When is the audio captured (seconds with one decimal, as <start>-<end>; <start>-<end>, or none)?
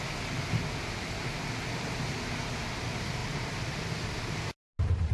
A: 0.0-5.1